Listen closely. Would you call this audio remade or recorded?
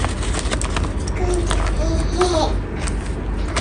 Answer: recorded